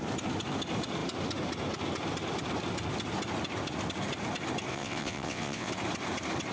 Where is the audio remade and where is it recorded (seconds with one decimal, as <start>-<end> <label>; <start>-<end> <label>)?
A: 0.0-4.7 recorded; 4.7-5.7 remade; 5.7-6.5 recorded